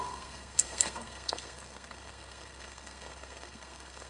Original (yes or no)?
no